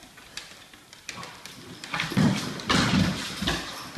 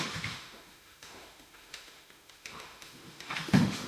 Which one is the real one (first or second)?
first